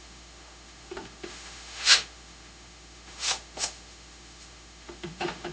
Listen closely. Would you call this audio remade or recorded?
remade